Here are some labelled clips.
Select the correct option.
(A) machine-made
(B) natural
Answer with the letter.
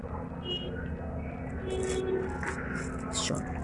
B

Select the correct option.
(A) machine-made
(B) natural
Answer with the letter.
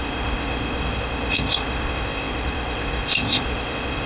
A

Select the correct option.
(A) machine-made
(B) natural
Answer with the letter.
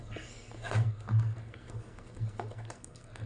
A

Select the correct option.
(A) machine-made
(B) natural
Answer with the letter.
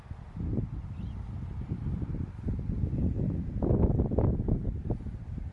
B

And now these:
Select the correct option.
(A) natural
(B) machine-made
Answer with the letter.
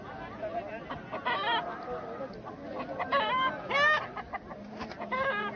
A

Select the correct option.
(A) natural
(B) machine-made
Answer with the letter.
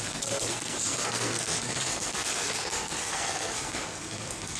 B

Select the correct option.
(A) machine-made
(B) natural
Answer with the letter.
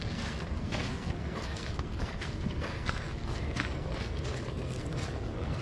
A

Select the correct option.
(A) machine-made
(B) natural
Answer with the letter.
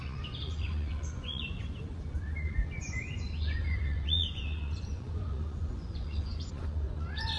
A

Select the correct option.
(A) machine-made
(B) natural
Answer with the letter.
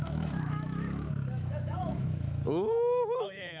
A